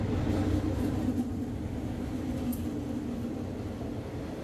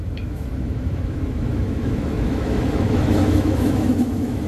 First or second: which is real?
first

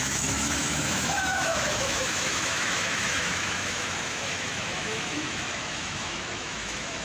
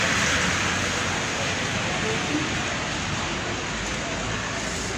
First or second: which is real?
second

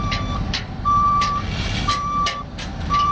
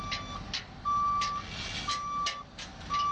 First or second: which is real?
second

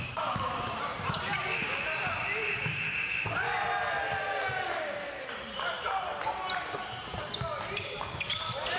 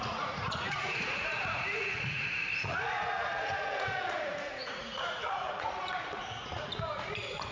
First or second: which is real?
first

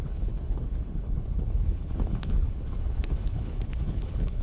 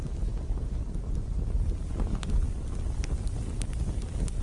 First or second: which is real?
second